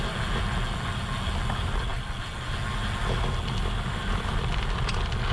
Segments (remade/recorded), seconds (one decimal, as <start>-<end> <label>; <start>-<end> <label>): 0.0-5.3 recorded